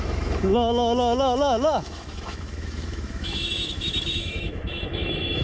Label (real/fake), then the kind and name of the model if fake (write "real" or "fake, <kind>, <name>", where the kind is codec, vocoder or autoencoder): fake, autoencoder, DAC-VAE